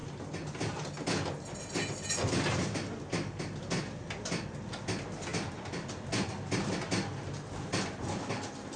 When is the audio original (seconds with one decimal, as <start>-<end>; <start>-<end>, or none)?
0.0-8.8